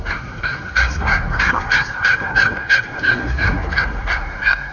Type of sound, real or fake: fake